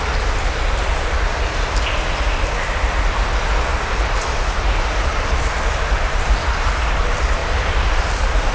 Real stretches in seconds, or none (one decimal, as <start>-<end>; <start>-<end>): 0.0-3.7; 6.7-7.4